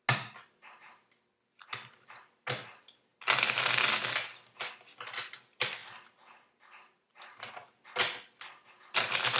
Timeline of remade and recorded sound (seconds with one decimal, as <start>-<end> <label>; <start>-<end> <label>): 0.0-9.4 recorded